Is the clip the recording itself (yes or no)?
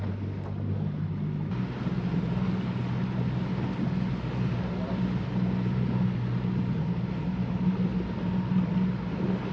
yes